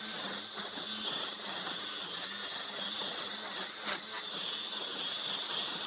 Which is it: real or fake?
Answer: real